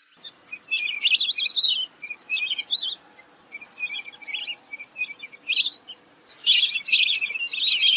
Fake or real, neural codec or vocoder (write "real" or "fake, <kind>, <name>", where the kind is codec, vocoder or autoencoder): real